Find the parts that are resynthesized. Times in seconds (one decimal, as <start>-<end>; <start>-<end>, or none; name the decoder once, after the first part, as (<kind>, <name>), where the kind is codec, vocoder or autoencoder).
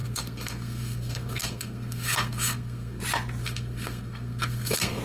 0.0-3.0 (codec, SNAC); 3.4-5.0